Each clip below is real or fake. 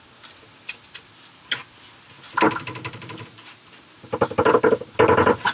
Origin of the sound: real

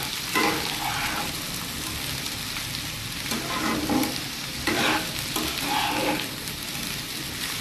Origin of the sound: real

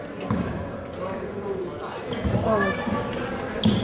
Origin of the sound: real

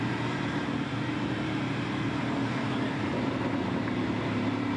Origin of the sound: fake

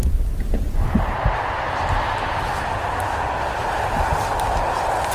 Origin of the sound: real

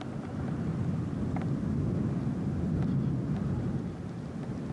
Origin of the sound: real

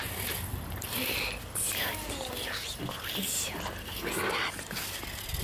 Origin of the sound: real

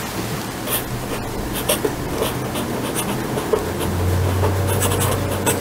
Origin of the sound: real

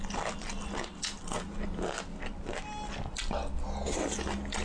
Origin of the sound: real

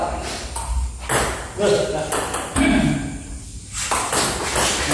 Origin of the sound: real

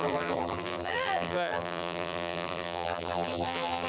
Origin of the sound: fake